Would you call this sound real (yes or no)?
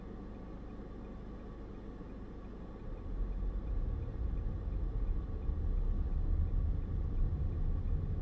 yes